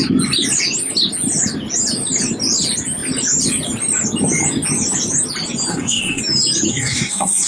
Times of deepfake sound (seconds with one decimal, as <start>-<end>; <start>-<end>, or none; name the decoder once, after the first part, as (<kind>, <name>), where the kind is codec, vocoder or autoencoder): 5.7-6.2 (codec, SNAC); 6.7-7.5